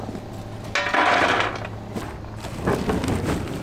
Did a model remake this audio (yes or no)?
no